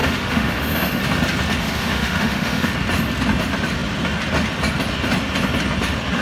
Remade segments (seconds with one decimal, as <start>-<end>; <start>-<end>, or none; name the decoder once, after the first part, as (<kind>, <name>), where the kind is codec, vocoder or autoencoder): 0.0-1.0 (autoencoder, DAC-VAE); 1.6-2.7